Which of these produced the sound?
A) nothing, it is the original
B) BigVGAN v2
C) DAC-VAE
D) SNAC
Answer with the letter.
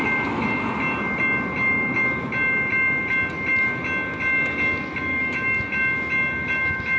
A